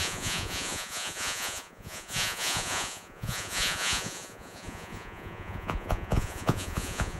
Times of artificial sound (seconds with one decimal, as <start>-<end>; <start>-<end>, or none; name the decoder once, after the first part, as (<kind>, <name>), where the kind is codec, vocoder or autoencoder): 0.0-7.2 (vocoder, Vocos)